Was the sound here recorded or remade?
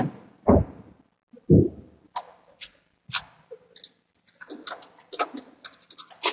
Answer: recorded